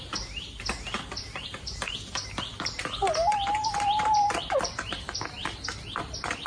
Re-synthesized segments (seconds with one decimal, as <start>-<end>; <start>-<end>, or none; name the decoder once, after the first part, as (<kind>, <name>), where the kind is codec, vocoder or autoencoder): none